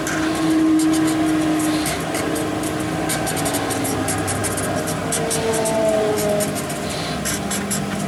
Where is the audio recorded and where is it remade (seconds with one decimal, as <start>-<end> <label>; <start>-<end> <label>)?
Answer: 0.0-8.1 recorded